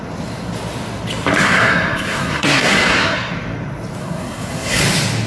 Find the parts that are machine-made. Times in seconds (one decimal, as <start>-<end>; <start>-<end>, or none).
1.4-3.3; 4.0-4.8